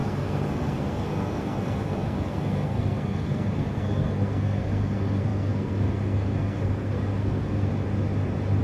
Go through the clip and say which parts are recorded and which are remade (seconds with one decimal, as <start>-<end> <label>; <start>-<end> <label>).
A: 0.0-7.7 remade; 7.7-8.6 recorded